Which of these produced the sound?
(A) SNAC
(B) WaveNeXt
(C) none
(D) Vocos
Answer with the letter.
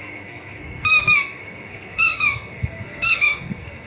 A